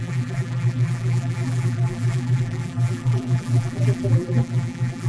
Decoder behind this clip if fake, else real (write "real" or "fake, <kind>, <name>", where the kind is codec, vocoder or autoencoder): fake, vocoder, BigVGAN v2